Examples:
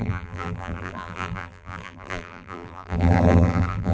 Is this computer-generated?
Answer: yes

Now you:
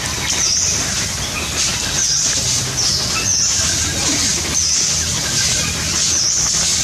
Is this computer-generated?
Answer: no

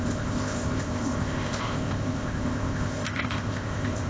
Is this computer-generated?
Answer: yes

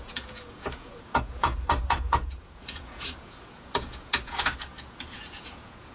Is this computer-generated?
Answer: yes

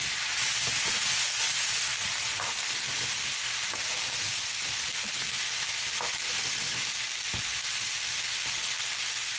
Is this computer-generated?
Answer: no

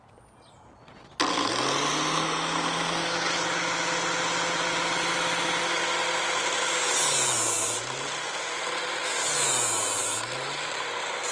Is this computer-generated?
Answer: no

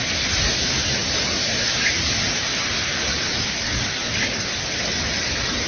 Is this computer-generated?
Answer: no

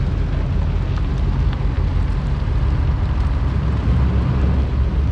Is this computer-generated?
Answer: no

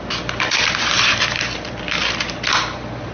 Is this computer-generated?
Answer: no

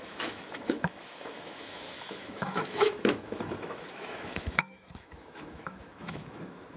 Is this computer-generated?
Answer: yes